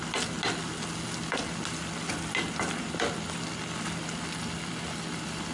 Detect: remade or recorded recorded